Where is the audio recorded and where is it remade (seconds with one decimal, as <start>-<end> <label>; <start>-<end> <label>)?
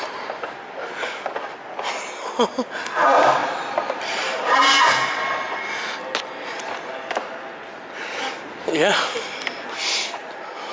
0.0-3.4 recorded; 3.4-4.8 remade; 4.8-10.7 recorded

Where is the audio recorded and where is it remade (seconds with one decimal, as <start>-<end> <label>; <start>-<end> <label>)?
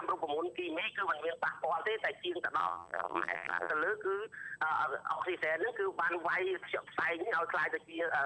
0.0-2.6 recorded; 2.6-3.7 remade; 3.7-8.3 recorded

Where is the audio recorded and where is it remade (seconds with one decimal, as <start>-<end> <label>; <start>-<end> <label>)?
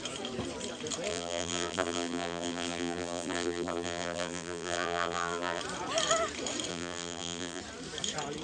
0.0-1.1 recorded; 1.1-5.6 remade; 5.6-6.7 recorded; 6.7-7.6 remade; 7.6-8.4 recorded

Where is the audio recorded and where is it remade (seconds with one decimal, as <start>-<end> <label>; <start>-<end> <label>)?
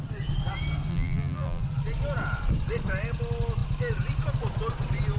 0.0-0.9 recorded; 0.9-1.6 remade; 1.6-5.2 recorded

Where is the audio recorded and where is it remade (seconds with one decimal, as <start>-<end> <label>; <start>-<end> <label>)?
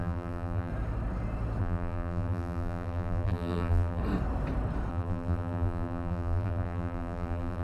0.0-0.7 remade; 0.7-1.6 recorded; 1.6-4.0 remade; 4.0-4.9 recorded; 4.9-7.6 remade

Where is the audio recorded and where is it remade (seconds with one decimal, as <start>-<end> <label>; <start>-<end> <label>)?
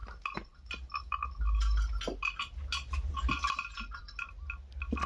0.0-5.1 recorded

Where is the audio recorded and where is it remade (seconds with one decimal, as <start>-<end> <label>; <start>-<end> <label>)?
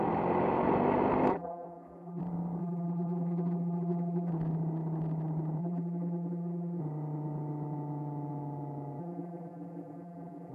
0.0-1.3 recorded; 1.3-2.2 remade; 2.2-2.6 recorded; 2.6-4.3 remade; 4.3-5.6 recorded; 5.6-6.8 remade; 6.8-9.0 recorded; 9.0-10.5 remade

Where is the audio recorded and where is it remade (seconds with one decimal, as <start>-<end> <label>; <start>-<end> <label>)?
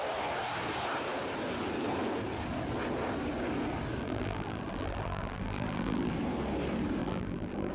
0.0-4.0 recorded; 4.0-6.1 remade; 6.1-7.0 recorded; 7.0-7.7 remade